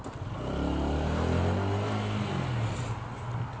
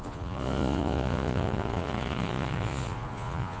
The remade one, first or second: second